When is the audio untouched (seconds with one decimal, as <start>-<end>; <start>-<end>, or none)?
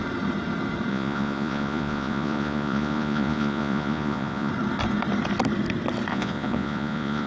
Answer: 0.0-0.9; 4.5-6.1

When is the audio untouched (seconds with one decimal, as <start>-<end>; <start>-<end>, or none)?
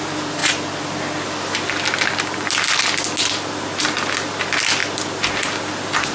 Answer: 0.0-6.1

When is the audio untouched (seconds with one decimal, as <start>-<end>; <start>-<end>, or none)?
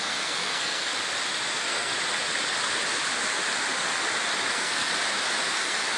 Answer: 0.9-1.5; 1.9-4.5; 4.9-5.5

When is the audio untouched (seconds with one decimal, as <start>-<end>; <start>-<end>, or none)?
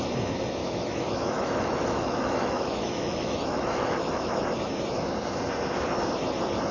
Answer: 0.0-0.6; 4.4-6.7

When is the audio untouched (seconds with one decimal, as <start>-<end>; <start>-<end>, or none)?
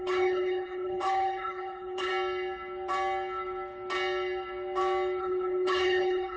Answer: 2.1-5.2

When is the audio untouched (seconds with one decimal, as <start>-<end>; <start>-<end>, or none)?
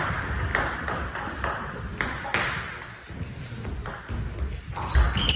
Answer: 0.0-5.4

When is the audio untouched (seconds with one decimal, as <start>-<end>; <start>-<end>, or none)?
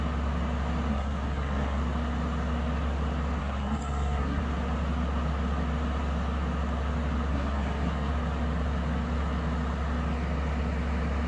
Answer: 0.0-0.9; 1.8-3.4; 4.4-7.3; 8.1-11.3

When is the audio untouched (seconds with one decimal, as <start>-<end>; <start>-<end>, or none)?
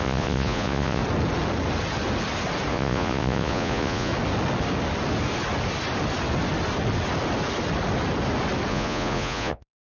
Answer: 1.0-2.7; 4.1-8.7